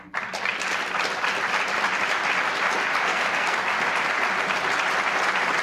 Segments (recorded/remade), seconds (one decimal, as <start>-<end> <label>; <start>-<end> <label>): 0.0-3.1 recorded; 3.1-3.6 remade; 3.6-5.6 recorded